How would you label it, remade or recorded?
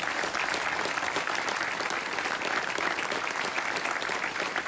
recorded